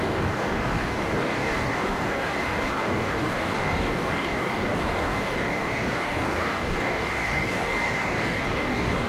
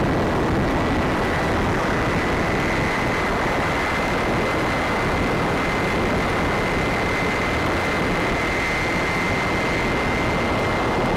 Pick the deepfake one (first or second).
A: first